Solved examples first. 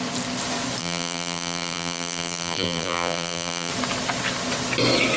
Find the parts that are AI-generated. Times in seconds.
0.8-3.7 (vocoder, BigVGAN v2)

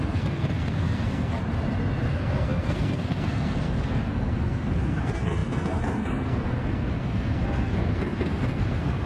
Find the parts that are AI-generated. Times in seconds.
0.0-1.4 (codec, SNAC); 2.1-9.1

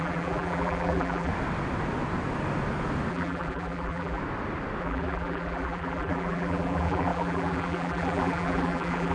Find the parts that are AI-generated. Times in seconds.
0.0-1.3 (vocoder, BigVGAN v2); 3.1-4.2; 4.8-9.1

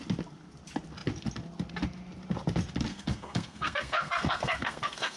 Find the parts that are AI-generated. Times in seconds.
2.9-5.2 (codec, SNAC)

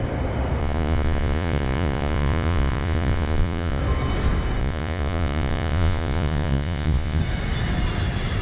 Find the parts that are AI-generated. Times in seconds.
0.6-3.8 (vocoder, Vocos); 4.6-7.2

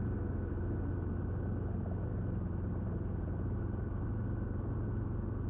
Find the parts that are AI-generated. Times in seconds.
none

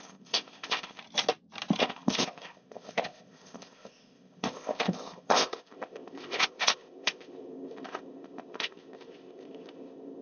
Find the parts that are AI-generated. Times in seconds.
0.0-1.0 (codec, ZipCodec); 1.8-10.2

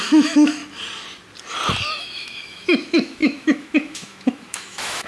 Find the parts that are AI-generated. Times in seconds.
0.0-0.6 (autoencoder, DAC-VAE); 2.0-5.1